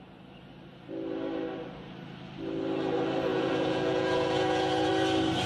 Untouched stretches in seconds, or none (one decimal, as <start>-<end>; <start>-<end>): 0.0-3.3; 4.9-5.5